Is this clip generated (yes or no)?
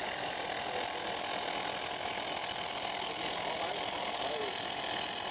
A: no